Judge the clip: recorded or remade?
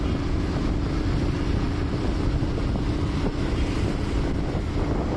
recorded